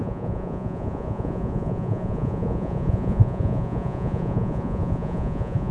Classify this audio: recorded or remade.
remade